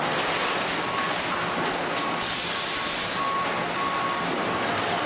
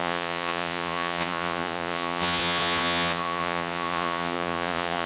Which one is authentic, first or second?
first